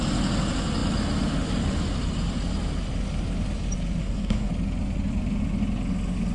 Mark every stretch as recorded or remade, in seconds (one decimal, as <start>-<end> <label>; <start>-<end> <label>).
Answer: 0.0-4.0 recorded; 4.0-4.5 remade; 4.5-6.3 recorded